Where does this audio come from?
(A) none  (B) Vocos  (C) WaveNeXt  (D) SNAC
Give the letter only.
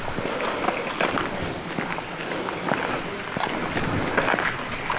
A